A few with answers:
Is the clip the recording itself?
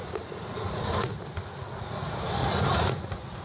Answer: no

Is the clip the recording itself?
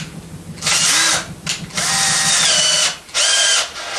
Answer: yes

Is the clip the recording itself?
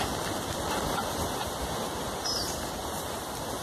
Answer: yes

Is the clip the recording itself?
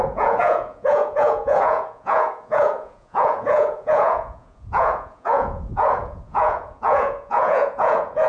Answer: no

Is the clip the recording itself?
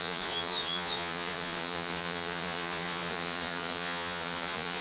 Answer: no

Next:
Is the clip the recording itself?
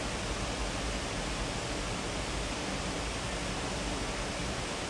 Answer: yes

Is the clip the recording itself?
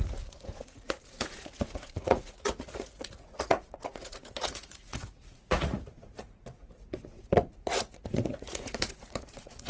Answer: no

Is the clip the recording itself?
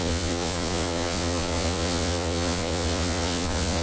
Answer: no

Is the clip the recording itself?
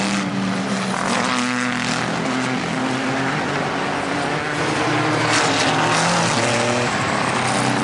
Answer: yes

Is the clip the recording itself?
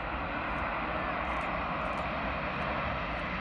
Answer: yes